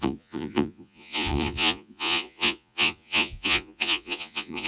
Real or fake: fake